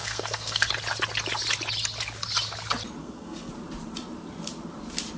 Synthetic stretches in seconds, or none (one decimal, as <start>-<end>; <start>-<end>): 0.0-0.7; 3.0-3.5